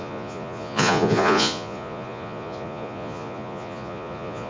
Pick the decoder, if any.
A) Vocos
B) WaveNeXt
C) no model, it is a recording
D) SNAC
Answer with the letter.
A